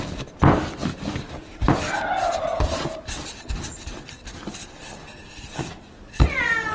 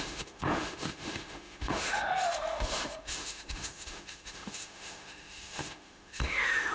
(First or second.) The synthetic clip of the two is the second